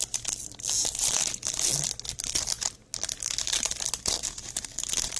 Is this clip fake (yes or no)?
no